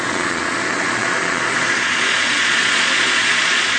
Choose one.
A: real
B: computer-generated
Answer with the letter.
B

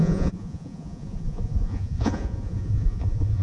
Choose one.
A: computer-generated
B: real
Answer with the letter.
A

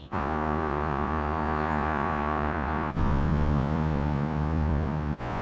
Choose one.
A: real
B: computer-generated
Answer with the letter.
B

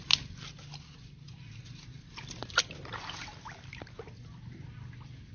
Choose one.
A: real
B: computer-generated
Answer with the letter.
A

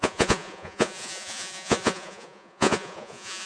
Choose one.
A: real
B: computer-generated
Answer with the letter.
B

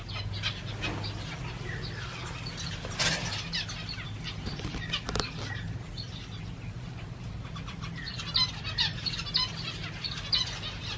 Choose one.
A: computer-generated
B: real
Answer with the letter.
B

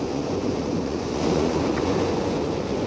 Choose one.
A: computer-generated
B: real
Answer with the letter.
A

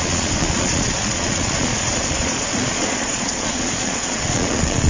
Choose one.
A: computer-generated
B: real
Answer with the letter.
A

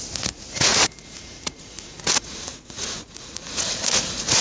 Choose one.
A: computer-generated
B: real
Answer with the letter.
A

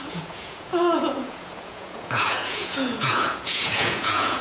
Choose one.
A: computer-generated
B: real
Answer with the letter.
A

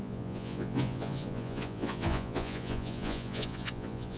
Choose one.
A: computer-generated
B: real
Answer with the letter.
A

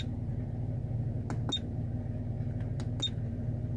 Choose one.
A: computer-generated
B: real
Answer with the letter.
B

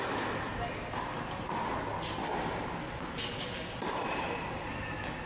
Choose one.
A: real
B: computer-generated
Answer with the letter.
A